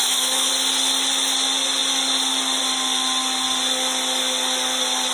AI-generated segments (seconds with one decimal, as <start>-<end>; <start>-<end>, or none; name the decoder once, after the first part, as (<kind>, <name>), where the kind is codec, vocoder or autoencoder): 0.0-0.5 (autoencoder, DAC-VAE)